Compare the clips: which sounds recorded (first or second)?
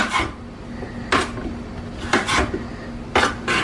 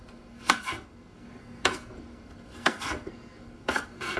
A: first